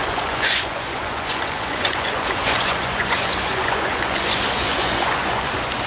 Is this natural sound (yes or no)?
no